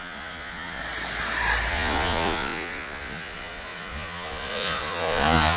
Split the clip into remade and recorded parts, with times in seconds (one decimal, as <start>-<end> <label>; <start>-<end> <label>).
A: 0.0-0.8 remade; 0.8-1.7 recorded; 1.7-5.6 remade

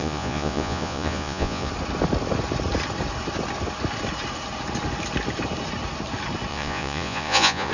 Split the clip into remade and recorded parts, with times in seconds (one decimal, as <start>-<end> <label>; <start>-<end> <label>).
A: 0.0-1.7 remade; 1.7-6.5 recorded; 6.5-7.7 remade

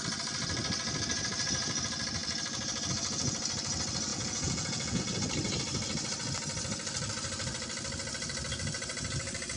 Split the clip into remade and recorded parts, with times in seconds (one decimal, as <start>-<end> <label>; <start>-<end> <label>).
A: 0.0-4.1 recorded; 4.1-5.0 remade; 5.0-9.6 recorded

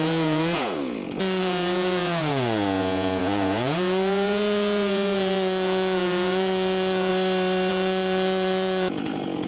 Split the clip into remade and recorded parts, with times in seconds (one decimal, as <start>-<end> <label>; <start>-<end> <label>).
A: 0.0-7.1 remade; 7.1-7.7 recorded; 7.7-9.5 remade

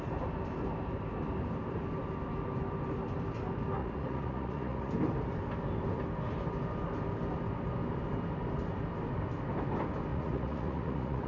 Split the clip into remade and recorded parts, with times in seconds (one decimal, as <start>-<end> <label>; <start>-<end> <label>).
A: 0.0-3.8 recorded; 3.8-4.9 remade; 4.9-10.1 recorded; 10.1-11.3 remade

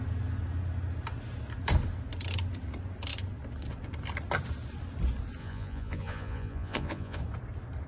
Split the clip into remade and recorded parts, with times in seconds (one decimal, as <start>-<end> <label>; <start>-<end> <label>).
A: 0.0-5.4 recorded; 5.4-7.2 remade; 7.2-7.9 recorded

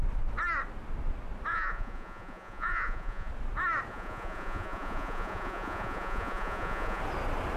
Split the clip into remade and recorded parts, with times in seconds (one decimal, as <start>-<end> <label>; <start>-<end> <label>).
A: 0.0-1.5 recorded; 1.5-3.3 remade; 3.3-3.9 recorded; 3.9-7.0 remade; 7.0-7.6 recorded

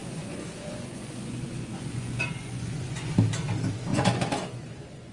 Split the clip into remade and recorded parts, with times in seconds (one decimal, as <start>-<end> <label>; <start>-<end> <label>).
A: 0.0-3.1 remade; 3.1-3.9 recorded; 3.9-5.1 remade